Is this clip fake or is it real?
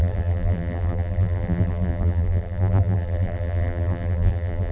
fake